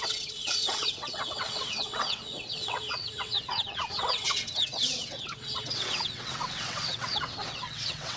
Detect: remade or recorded remade